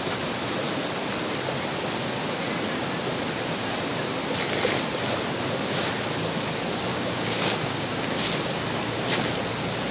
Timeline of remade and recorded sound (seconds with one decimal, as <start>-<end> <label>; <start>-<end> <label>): 0.0-6.9 recorded; 6.9-8.3 remade; 8.3-9.9 recorded